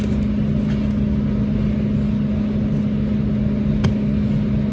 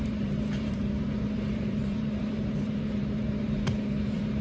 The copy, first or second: second